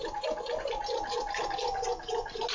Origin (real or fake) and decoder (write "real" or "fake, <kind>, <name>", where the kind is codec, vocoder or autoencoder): real